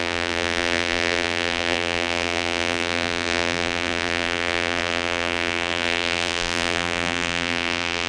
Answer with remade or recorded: remade